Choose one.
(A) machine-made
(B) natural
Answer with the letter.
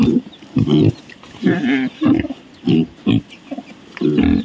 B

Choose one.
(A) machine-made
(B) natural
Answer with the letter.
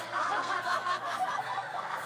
A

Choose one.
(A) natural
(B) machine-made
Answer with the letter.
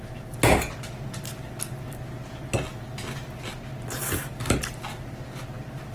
A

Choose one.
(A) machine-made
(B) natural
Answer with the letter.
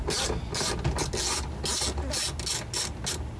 B